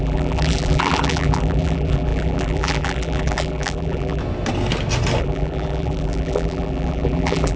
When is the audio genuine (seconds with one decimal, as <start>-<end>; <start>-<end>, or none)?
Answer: 4.2-5.2